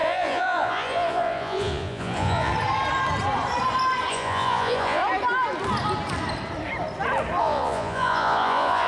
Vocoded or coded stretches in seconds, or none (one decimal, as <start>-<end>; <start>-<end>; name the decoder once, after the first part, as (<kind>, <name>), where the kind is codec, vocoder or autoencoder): 0.0-2.5 (vocoder, Vocos); 4.1-5.0; 7.4-8.9

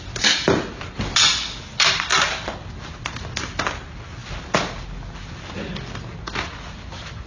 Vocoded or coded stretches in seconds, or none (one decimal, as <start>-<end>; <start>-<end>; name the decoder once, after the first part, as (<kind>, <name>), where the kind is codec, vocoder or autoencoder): none